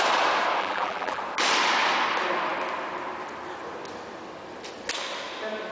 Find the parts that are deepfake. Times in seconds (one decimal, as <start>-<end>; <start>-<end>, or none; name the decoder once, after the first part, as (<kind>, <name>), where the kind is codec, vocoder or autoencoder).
0.6-1.2 (vocoder, BigVGAN v2)